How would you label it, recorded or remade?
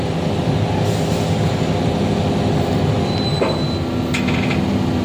recorded